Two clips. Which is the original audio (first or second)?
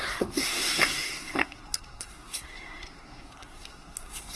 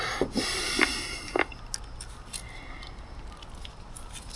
second